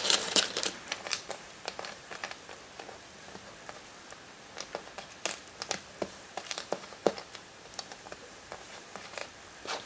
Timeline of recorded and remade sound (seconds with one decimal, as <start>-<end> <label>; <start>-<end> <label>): 0.0-2.2 remade; 2.2-6.1 recorded; 6.1-9.2 remade; 9.2-9.9 recorded